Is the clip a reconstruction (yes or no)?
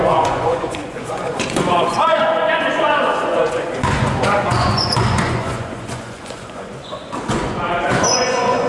yes